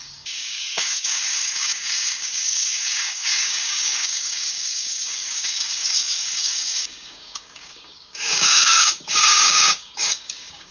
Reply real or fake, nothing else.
fake